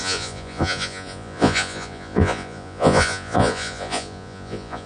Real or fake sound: fake